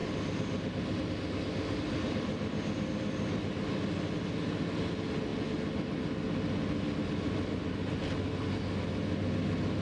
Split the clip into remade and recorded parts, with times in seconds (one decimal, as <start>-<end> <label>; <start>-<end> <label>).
0.0-9.8 recorded